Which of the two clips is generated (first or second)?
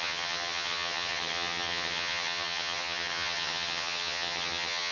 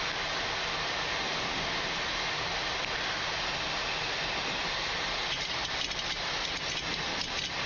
first